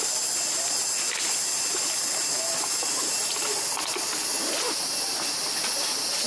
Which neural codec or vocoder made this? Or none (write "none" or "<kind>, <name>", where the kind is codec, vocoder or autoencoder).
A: none